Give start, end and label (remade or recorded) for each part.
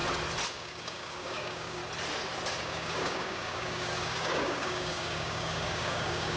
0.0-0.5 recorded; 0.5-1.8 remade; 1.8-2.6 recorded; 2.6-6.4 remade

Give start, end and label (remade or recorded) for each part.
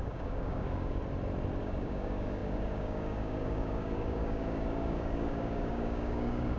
0.0-1.0 remade; 1.0-1.6 recorded; 1.6-6.6 remade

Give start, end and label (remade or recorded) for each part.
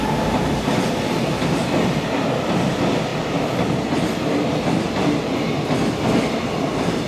0.0-7.1 recorded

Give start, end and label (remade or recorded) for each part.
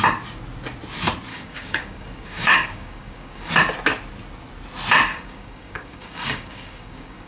0.0-1.3 recorded; 1.3-3.5 remade; 3.5-5.1 recorded; 5.1-7.3 remade